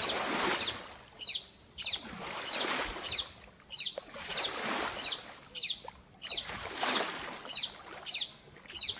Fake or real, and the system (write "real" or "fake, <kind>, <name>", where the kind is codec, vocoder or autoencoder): real